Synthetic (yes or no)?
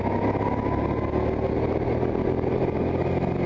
no